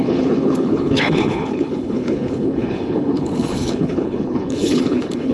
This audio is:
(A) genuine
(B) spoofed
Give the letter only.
B